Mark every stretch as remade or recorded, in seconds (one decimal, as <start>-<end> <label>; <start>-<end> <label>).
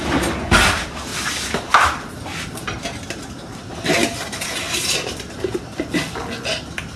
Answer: 0.0-7.0 recorded